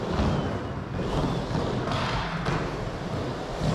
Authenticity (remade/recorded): recorded